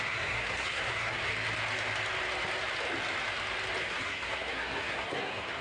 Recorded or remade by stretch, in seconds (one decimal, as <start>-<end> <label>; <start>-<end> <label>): 0.0-1.3 remade; 1.3-3.8 recorded; 3.8-5.6 remade